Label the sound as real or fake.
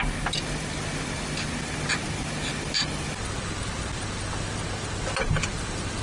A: real